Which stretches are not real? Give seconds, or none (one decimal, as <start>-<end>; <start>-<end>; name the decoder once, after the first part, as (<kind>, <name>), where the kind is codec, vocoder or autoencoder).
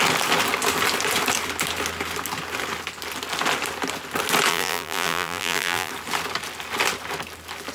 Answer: 4.5-5.9 (vocoder, BigVGAN v2)